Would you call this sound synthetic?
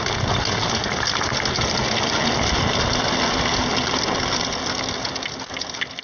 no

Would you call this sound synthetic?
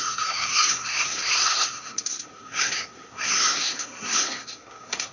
yes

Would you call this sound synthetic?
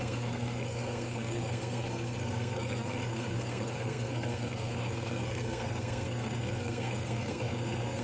yes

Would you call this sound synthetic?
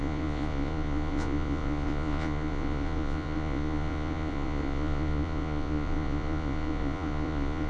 yes